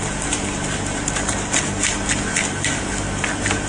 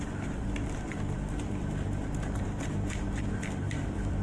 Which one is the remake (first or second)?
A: second